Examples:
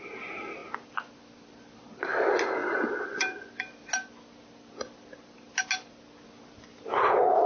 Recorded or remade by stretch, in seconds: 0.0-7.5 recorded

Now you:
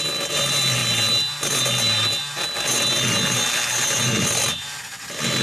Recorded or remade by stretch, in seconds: 0.0-4.4 recorded; 4.4-4.9 remade; 4.9-5.4 recorded

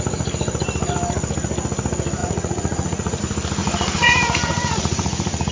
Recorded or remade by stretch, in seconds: 0.0-2.2 recorded; 2.2-3.2 remade; 3.2-3.6 recorded; 3.6-5.5 remade

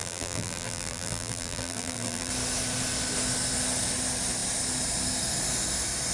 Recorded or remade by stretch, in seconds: 0.0-2.3 remade; 2.3-6.1 recorded

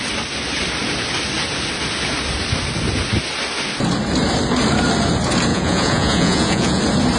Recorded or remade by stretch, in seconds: 0.0-5.5 recorded; 5.5-6.8 remade; 6.8-7.2 recorded